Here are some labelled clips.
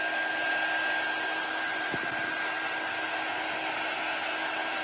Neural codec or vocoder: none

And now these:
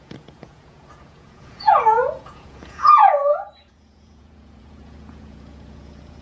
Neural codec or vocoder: vocoder, Vocos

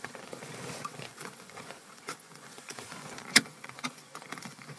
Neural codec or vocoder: vocoder, Vocos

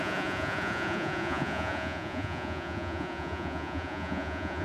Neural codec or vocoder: vocoder, Vocos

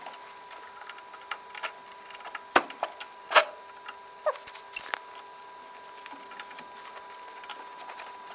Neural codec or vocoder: none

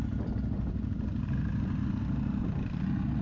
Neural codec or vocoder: none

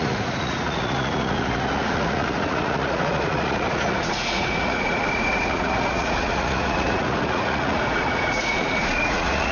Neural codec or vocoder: vocoder, Vocos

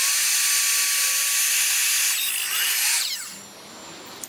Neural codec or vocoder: none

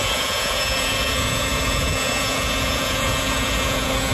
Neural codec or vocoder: vocoder, Vocos